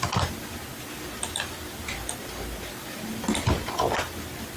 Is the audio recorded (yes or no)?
yes